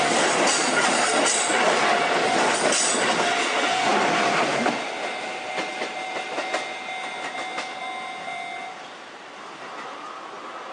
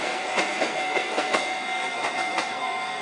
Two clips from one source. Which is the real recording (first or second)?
first